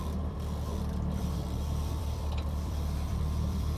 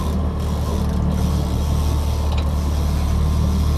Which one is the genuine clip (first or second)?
second